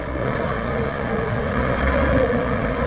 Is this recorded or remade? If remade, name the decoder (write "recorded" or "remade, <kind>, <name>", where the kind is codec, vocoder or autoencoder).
remade, vocoder, Vocos